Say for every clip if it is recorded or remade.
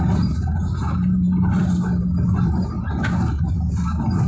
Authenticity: recorded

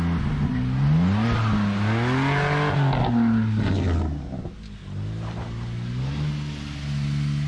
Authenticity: recorded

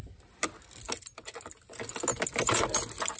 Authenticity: recorded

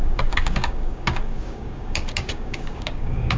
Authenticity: remade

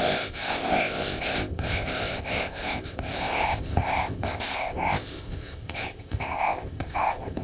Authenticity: remade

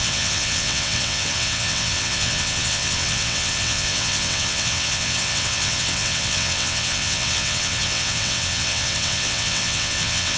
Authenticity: remade